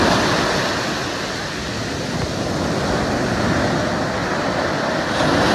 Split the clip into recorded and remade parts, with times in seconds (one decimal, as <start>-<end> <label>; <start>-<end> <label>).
0.0-5.5 recorded